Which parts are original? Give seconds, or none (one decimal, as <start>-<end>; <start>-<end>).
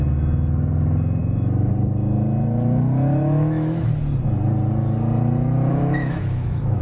0.0-1.2; 1.7-3.1; 3.9-5.7